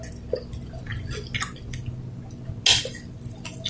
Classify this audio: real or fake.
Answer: real